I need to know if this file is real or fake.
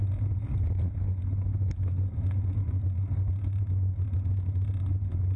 real